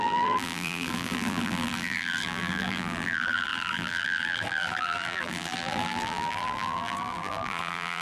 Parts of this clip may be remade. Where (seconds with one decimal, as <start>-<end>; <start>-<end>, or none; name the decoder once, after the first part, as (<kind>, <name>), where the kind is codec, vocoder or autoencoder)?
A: 0.0-8.0 (vocoder, BigVGAN v2)